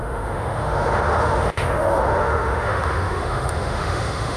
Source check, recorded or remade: remade